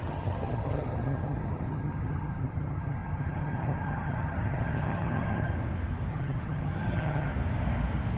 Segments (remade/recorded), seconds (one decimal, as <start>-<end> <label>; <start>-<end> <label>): 0.0-5.5 remade; 5.5-6.1 recorded; 6.1-7.3 remade; 7.3-8.2 recorded